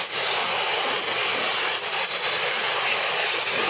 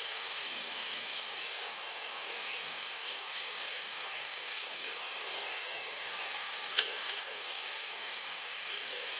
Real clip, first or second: first